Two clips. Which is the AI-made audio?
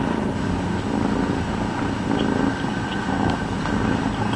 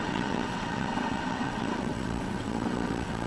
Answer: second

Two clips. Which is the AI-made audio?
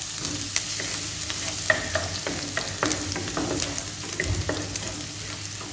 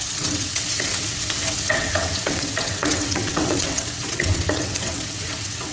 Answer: second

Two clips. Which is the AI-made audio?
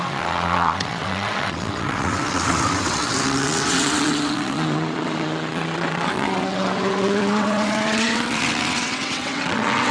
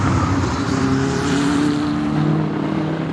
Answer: first